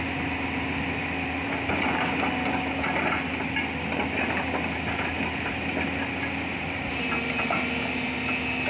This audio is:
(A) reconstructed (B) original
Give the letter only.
B